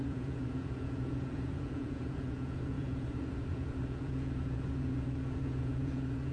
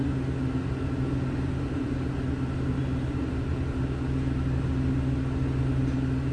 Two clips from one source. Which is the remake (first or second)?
first